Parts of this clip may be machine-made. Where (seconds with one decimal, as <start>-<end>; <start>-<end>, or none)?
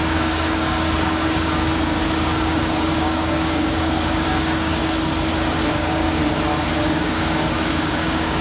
0.0-4.8; 5.7-6.2; 6.9-8.4